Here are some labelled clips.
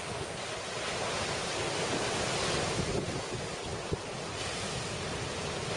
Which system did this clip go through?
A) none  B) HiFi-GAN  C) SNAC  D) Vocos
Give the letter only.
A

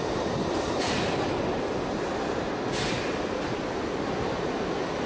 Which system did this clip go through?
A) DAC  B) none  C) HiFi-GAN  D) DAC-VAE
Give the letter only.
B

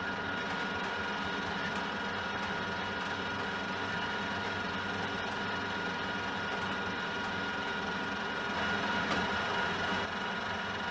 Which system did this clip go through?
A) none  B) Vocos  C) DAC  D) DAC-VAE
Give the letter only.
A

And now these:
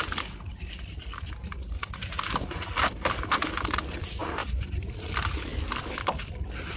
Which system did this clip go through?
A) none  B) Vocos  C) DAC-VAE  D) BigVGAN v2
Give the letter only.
D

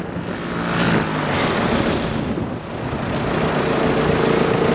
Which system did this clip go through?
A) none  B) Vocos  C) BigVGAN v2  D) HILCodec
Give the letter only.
A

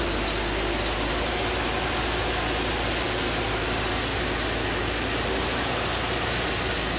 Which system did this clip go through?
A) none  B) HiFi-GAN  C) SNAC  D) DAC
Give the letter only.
A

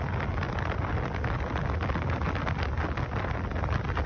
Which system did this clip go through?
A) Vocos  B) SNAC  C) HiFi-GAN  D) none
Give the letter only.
D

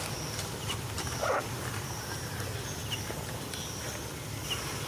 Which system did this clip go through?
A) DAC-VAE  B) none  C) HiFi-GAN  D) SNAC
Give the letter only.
B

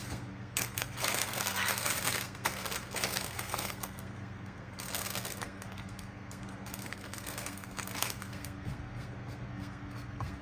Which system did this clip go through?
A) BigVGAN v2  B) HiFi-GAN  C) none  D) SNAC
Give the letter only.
D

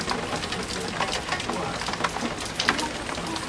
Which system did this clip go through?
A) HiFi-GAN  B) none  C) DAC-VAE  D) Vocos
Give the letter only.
B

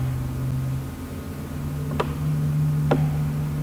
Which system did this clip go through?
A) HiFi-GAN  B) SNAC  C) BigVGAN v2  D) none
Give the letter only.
D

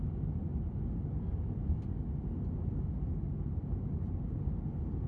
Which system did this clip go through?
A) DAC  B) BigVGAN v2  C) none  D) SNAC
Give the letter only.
C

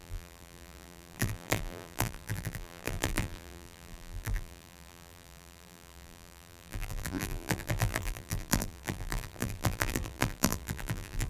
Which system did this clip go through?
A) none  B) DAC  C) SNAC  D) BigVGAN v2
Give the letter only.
D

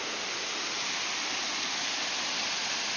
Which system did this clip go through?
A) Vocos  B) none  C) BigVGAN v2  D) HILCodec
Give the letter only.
B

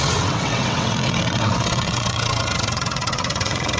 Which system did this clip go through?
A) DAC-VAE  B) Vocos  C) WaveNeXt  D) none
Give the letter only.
C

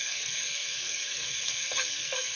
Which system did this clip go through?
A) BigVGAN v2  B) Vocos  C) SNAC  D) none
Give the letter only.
C